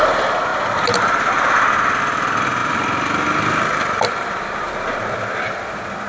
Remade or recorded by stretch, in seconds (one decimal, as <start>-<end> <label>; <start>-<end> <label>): 0.0-6.1 recorded